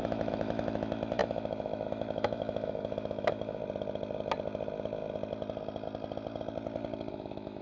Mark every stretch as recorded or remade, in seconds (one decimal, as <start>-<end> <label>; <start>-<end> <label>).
0.0-3.6 remade; 3.6-7.1 recorded; 7.1-7.6 remade